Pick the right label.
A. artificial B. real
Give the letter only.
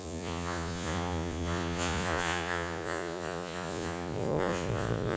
A